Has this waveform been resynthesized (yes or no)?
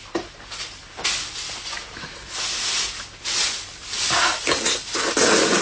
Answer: no